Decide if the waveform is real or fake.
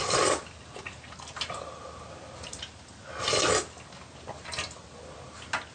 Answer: real